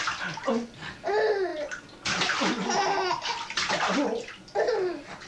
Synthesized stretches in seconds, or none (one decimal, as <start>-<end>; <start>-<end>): none